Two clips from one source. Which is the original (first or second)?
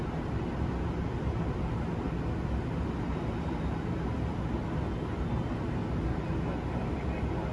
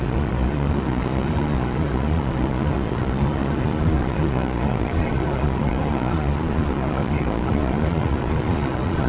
first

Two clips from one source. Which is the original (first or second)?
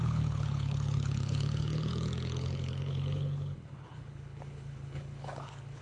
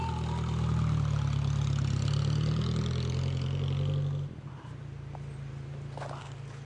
second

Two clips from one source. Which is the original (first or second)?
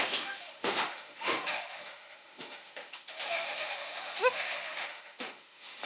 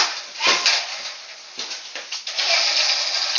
second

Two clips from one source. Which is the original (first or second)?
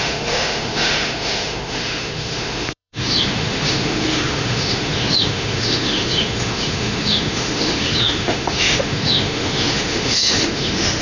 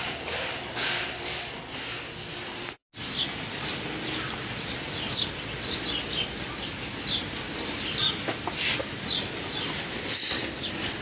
second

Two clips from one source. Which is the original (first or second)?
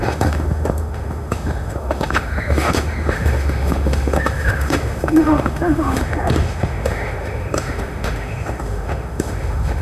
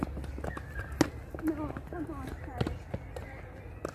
second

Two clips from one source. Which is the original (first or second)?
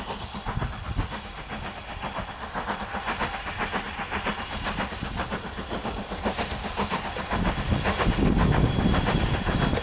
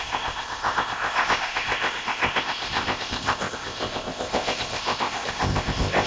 first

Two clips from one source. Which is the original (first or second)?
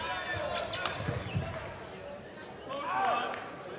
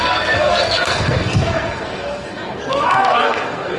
first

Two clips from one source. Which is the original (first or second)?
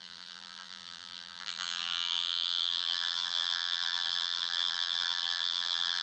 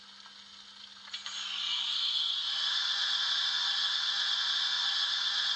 second